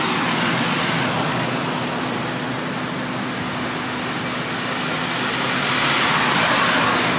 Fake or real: real